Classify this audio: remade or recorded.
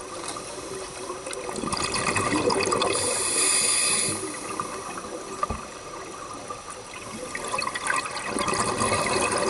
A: recorded